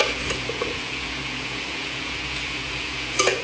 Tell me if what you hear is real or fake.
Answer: fake